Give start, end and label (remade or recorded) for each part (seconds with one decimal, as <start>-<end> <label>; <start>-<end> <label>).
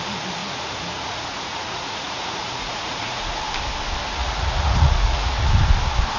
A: 0.0-0.4 recorded; 0.4-3.3 remade; 3.3-4.2 recorded; 4.2-5.5 remade; 5.5-6.2 recorded